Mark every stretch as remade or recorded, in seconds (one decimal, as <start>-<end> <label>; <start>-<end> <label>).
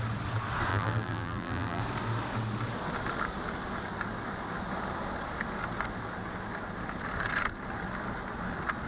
0.0-0.7 recorded; 0.7-1.8 remade; 1.8-8.9 recorded